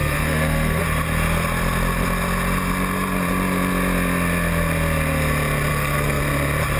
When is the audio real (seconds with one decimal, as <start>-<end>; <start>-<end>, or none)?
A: 0.8-5.7; 6.2-6.8